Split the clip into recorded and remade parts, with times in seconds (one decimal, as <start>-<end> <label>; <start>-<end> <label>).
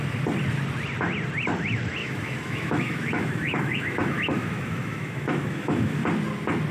0.0-2.0 recorded; 2.0-6.0 remade; 6.0-6.7 recorded